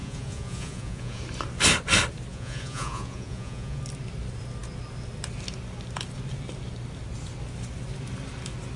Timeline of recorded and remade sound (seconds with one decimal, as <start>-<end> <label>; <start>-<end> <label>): 0.0-1.2 remade; 1.2-2.3 recorded; 2.3-3.8 remade; 3.8-8.8 recorded